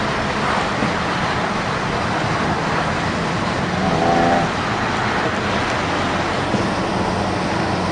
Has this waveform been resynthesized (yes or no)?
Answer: no